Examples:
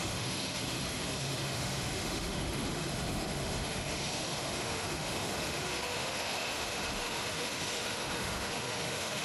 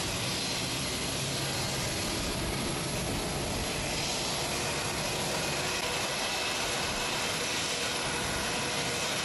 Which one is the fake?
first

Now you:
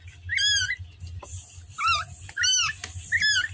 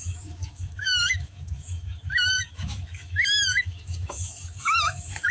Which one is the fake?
second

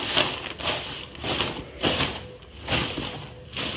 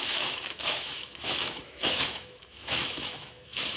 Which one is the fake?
second